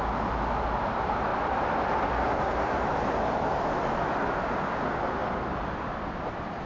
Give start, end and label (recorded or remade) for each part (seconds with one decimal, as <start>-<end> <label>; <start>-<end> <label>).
0.0-1.3 recorded; 1.3-2.1 remade; 2.1-5.2 recorded; 5.2-6.7 remade